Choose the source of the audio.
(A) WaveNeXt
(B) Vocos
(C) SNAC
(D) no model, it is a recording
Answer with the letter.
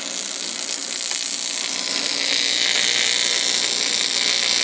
D